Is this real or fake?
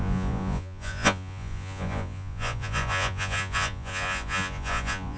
fake